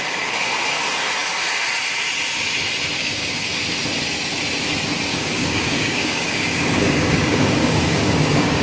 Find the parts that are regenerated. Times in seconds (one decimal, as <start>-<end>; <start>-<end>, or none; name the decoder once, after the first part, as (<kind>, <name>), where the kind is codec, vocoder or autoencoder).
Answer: 3.0-3.5 (codec, DAC); 5.1-8.6